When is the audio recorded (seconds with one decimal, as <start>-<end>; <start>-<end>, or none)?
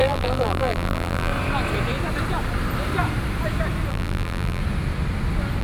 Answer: 1.3-3.9; 4.6-5.6